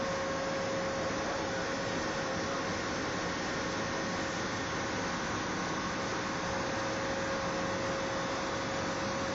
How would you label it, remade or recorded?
recorded